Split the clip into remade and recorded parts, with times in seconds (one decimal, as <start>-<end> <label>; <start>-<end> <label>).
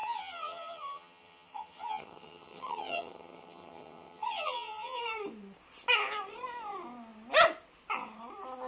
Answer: 0.0-5.0 remade; 5.0-8.7 recorded